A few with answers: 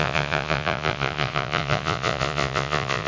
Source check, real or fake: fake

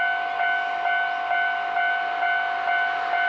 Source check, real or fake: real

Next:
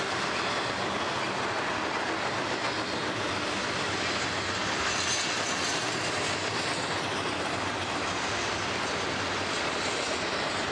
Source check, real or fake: real